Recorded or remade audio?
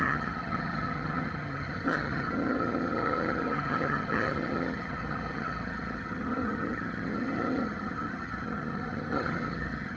remade